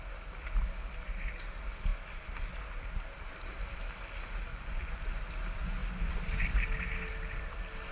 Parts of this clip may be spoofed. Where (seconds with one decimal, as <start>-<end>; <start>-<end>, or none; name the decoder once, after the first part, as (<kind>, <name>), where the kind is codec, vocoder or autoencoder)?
4.5-5.0 (vocoder, Vocos)